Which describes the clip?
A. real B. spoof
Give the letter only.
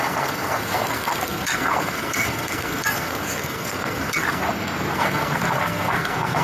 B